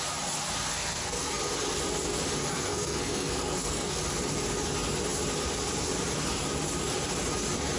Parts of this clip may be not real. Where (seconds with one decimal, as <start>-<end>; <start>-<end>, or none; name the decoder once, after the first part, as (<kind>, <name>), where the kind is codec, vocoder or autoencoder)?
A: 0.7-1.4 (codec, SNAC); 2.5-4.0